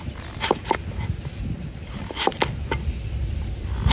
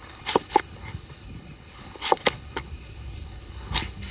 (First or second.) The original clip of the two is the first